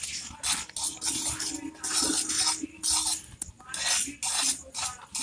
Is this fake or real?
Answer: real